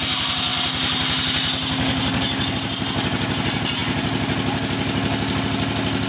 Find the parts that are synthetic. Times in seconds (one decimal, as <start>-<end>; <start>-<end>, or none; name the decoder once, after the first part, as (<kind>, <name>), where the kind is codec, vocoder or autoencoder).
none